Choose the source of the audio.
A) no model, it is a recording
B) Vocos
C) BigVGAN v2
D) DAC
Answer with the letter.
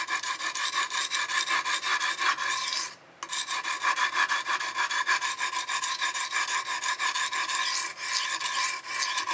A